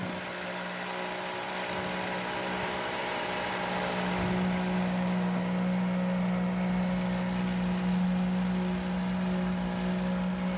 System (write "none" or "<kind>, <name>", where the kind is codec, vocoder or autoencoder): none